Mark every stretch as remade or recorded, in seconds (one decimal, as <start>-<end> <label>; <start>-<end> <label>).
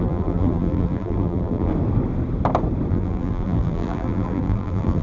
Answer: 0.0-1.7 remade; 1.7-2.9 recorded; 2.9-5.0 remade